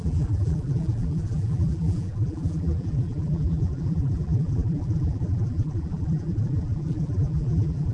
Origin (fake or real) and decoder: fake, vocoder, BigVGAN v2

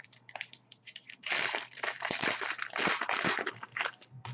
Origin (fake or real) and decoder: fake, vocoder, BigVGAN v2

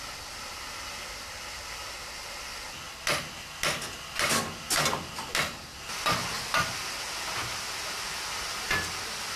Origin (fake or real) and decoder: real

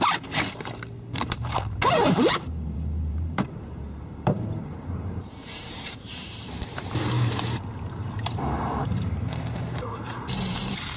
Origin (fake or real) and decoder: fake, vocoder, BigVGAN v2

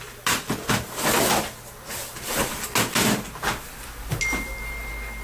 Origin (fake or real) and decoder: real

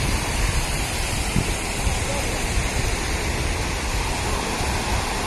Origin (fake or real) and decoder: fake, vocoder, BigVGAN v2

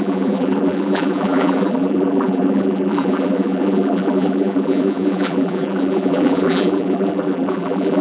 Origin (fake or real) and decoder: fake, vocoder, BigVGAN v2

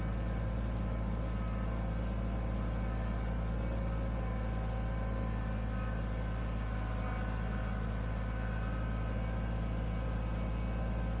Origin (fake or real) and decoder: real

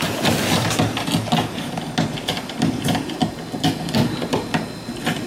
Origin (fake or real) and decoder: real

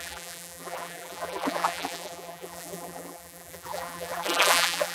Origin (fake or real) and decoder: fake, vocoder, BigVGAN v2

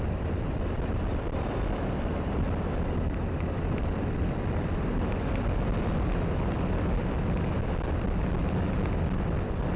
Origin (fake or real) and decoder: fake, vocoder, BigVGAN v2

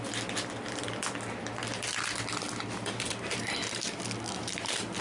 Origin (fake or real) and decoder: fake, vocoder, BigVGAN v2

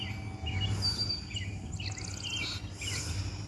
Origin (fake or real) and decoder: real